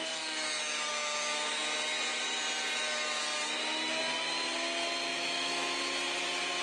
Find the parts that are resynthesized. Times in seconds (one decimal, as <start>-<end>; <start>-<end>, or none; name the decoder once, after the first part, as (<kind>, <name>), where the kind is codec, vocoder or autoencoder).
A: 5.1-5.8 (autoencoder, DAC-VAE)